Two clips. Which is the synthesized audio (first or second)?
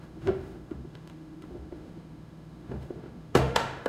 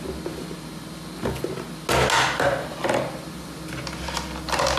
first